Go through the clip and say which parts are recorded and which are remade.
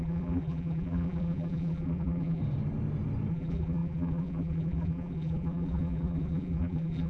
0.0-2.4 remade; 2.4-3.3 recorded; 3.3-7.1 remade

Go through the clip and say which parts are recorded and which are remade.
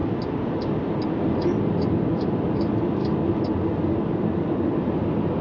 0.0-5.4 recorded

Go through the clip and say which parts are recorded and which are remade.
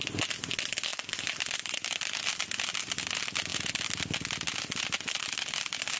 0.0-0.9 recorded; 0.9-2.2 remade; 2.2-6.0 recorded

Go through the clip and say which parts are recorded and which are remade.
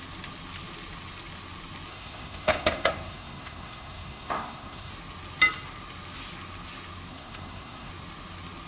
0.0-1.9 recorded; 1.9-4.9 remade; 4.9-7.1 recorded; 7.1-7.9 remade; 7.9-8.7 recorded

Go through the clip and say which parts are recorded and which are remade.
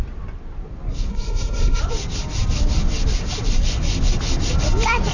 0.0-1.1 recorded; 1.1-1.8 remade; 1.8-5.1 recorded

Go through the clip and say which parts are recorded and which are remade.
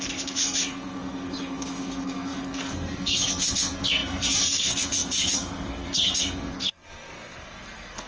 0.0-8.1 remade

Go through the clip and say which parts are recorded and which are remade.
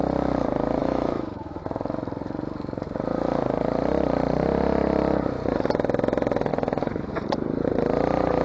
0.0-0.8 recorded; 0.8-1.6 remade; 1.6-6.5 recorded; 6.5-7.1 remade; 7.1-8.4 recorded